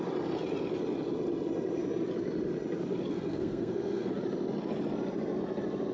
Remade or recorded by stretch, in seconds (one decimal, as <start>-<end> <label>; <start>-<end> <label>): 0.0-3.1 recorded; 3.1-4.1 remade; 4.1-5.9 recorded